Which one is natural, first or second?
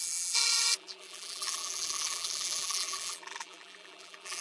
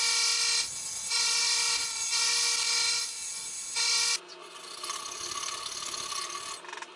second